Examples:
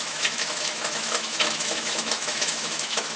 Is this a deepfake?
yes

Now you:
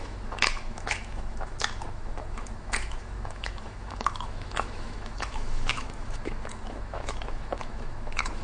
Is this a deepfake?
yes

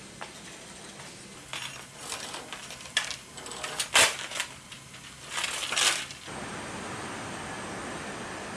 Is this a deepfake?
no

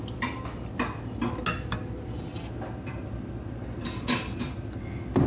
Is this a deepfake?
no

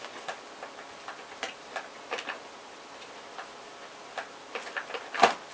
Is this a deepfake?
no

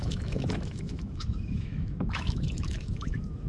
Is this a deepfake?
yes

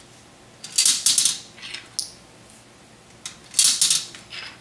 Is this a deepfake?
no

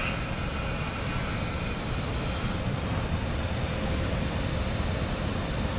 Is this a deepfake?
no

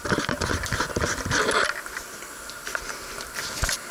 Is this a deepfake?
no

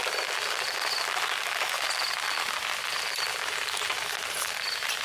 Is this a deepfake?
no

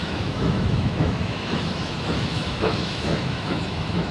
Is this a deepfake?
yes